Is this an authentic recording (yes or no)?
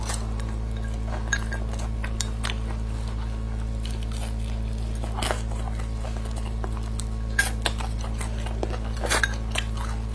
yes